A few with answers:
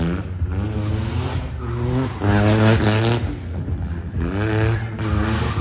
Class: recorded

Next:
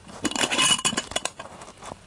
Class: remade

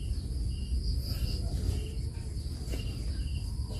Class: recorded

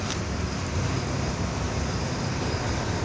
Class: remade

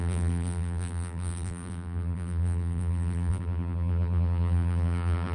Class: remade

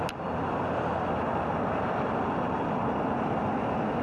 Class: recorded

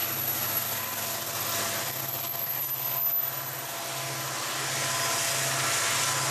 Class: recorded